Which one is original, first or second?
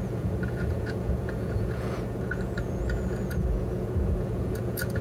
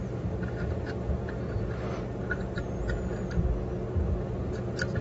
second